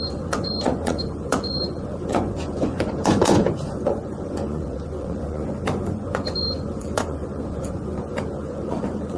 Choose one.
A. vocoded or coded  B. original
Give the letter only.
A